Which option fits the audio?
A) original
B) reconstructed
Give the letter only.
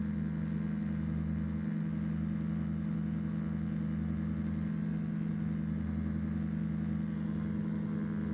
A